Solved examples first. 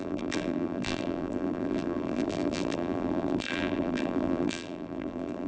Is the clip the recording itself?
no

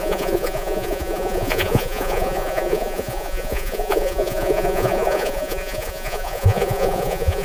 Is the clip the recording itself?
no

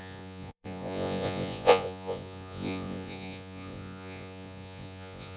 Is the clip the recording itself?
no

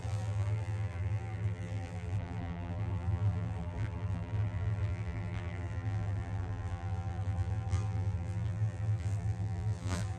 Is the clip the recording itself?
no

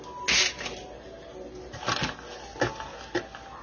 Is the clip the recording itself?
yes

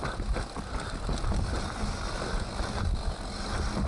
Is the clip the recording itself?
yes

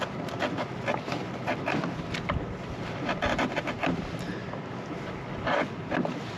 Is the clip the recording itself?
yes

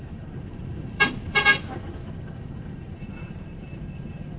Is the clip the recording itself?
no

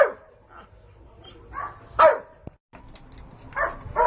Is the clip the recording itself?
yes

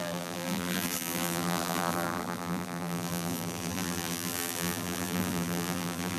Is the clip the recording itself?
no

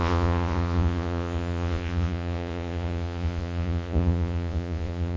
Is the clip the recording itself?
no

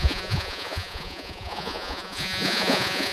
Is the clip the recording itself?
no